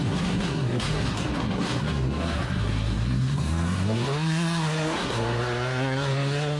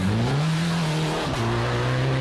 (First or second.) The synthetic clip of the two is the first